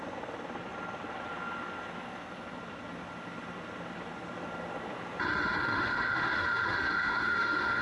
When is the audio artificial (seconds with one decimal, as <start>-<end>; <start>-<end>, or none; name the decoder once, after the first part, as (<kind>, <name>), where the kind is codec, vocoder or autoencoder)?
5.6-7.8 (autoencoder, DAC-VAE)